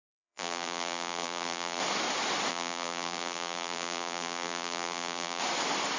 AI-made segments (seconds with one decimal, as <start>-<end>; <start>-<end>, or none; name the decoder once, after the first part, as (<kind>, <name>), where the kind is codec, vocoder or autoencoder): 0.0-1.8 (vocoder, BigVGAN v2); 2.5-5.4